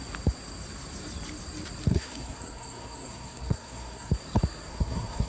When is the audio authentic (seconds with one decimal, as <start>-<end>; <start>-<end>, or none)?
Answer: 0.0-1.9; 4.1-4.7